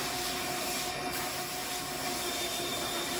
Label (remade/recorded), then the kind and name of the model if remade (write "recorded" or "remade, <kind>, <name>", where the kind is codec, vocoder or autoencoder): remade, vocoder, BigVGAN v2